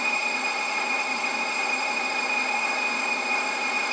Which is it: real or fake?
fake